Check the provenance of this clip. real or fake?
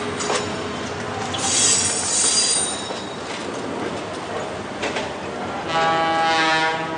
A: real